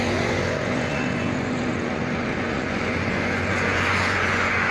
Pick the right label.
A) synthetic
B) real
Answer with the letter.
A